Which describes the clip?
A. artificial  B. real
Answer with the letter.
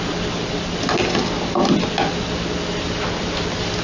B